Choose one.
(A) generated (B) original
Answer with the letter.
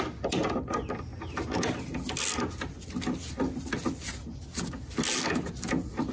B